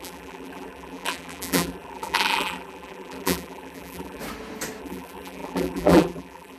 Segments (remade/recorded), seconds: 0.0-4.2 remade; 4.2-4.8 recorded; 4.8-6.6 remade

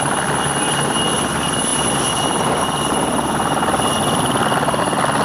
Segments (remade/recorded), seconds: 0.0-5.2 recorded

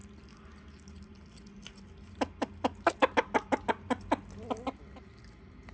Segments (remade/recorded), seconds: 0.0-5.7 recorded